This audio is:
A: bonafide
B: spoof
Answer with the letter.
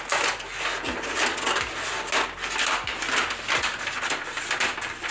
A